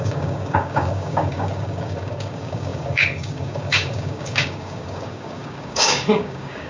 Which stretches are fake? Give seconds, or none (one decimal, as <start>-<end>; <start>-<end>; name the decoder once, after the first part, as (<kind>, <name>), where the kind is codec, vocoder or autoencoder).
0.0-6.7 (codec, DAC)